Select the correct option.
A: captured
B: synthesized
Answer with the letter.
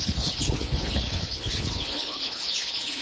B